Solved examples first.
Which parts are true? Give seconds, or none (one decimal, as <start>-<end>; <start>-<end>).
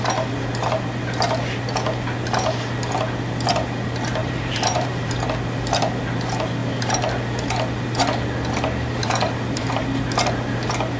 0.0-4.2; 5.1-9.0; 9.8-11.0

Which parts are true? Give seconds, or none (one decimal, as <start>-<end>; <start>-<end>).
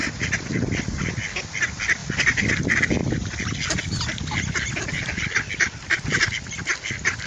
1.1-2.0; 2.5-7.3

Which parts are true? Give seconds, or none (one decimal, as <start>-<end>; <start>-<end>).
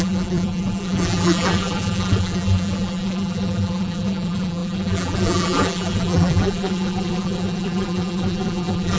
none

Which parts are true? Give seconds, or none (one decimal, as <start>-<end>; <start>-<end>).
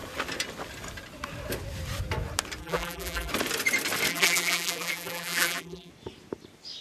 0.0-2.6; 3.3-4.1; 5.9-6.8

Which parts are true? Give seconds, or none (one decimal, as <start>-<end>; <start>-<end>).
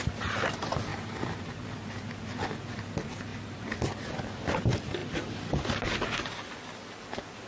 0.0-0.9; 1.5-3.3; 3.9-7.5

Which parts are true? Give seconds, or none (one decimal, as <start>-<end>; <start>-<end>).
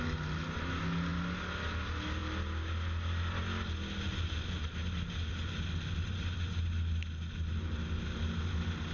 0.0-8.9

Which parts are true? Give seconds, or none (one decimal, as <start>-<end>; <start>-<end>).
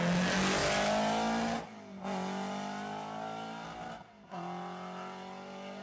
0.0-5.8